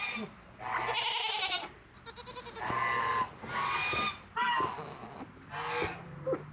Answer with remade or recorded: recorded